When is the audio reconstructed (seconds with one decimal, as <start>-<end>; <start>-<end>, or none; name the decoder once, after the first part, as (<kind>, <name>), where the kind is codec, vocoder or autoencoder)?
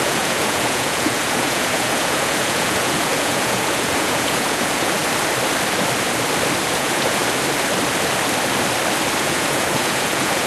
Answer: 0.0-5.0 (vocoder, Vocos); 6.6-7.2; 9.2-10.5